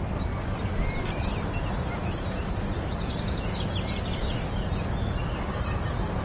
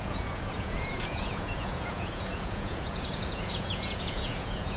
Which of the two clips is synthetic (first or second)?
second